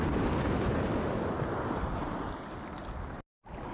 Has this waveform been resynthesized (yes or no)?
no